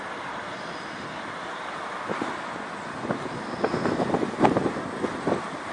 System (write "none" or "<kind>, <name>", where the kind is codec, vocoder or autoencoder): none